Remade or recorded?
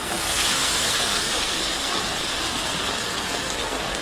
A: remade